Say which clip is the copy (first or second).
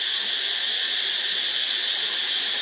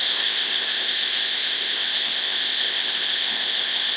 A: second